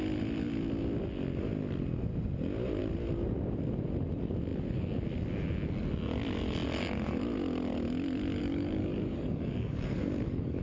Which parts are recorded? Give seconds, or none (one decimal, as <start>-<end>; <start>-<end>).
0.0-8.4